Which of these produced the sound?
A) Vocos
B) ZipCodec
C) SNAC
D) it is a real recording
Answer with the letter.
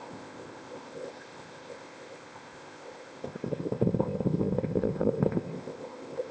B